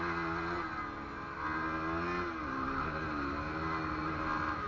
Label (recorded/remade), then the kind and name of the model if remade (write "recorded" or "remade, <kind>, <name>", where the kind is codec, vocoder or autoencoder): recorded